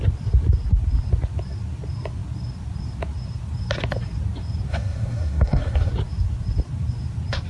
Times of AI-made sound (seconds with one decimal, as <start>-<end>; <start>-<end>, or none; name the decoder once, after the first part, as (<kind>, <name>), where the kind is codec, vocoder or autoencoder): 4.7-5.9 (codec, SNAC)